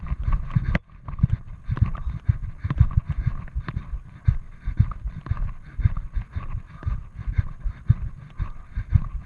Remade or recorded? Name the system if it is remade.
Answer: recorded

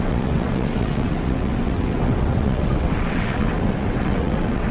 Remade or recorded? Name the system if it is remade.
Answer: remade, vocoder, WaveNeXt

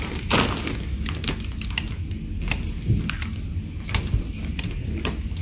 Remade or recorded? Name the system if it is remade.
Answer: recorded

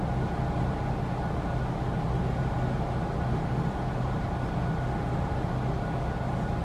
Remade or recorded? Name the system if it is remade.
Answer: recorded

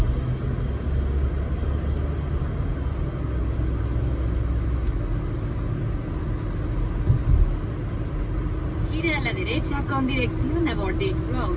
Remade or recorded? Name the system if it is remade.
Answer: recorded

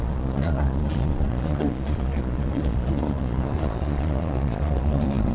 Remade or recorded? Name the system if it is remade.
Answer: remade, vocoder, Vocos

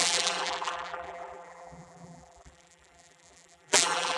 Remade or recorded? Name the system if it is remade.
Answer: remade, vocoder, BigVGAN v2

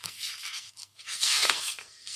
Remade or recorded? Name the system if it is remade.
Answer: remade, codec, SNAC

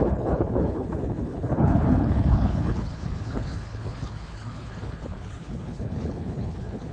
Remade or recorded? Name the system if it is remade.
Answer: remade, codec, HILCodec